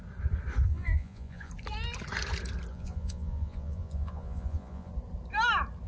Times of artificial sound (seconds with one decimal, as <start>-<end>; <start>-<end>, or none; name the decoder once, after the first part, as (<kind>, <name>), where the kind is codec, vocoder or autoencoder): 0.7-1.5 (vocoder, Vocos); 2.7-4.9